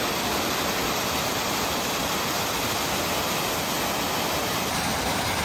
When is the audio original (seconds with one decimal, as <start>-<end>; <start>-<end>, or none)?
0.0-0.8; 1.3-5.4